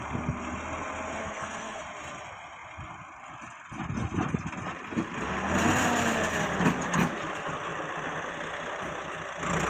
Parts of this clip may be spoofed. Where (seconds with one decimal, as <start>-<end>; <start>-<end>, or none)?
1.2-1.8